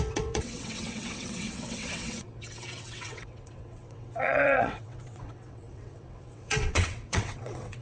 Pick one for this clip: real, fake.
fake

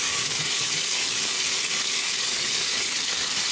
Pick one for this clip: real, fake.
fake